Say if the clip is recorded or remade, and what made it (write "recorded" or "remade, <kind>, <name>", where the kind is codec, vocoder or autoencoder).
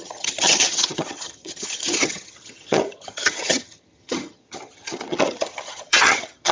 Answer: remade, vocoder, HiFi-GAN